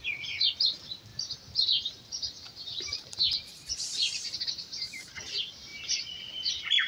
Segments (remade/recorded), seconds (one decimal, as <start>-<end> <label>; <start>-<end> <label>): 0.0-1.1 recorded; 1.1-5.2 remade; 5.2-5.7 recorded; 5.7-6.5 remade; 6.5-6.9 recorded